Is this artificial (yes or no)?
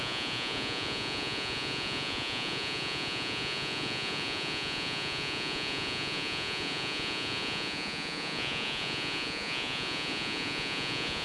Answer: yes